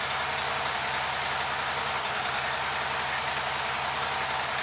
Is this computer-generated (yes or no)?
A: no